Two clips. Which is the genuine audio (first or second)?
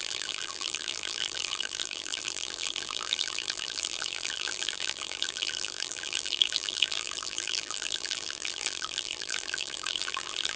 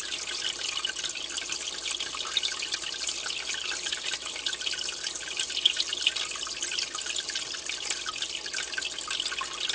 second